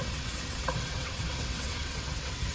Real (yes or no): no